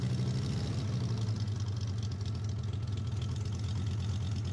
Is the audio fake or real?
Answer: real